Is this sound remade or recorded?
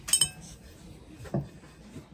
recorded